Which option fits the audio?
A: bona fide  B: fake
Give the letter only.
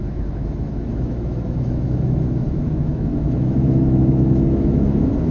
B